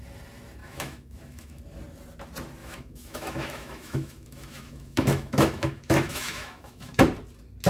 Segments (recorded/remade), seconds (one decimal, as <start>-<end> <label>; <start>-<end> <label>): 0.0-0.6 recorded; 0.6-1.6 remade; 1.6-2.6 recorded; 2.6-7.0 remade; 7.0-7.7 recorded